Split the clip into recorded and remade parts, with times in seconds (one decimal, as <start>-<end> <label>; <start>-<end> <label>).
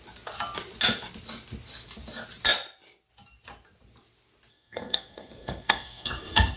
0.0-4.5 recorded; 4.5-6.6 remade